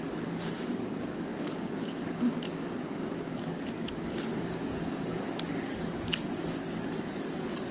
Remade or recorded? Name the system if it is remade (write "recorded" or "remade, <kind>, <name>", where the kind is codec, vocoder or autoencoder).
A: remade, codec, DAC